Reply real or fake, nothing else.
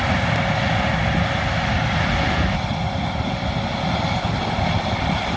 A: real